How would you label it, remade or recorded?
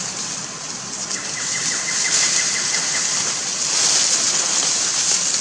recorded